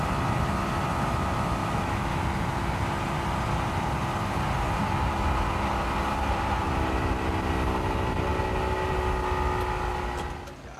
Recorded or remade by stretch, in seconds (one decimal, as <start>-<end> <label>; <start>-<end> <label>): 0.0-1.6 recorded; 1.6-2.2 remade; 2.2-10.8 recorded